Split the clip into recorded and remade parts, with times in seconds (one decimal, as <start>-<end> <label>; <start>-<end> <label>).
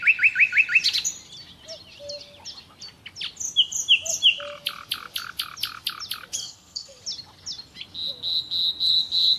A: 0.0-6.4 recorded; 6.4-7.0 remade; 7.0-9.4 recorded